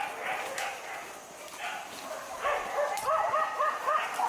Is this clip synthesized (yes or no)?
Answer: no